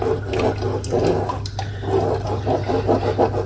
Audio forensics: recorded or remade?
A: recorded